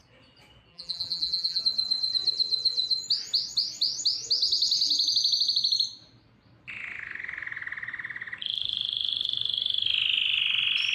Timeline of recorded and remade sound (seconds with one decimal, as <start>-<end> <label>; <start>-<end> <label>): 0.0-0.7 recorded; 0.7-1.6 remade; 1.6-10.9 recorded